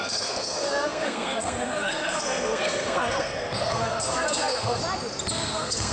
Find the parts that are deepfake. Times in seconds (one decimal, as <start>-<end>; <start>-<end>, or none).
0.0-4.8; 5.3-5.9

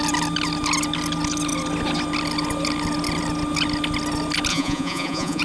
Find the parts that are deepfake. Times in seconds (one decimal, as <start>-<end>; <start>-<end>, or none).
4.5-5.4